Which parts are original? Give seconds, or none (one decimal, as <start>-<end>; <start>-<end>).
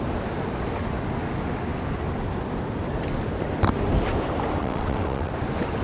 0.0-4.6; 5.3-5.8